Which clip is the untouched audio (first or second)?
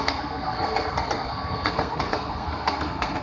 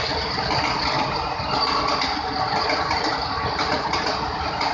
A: second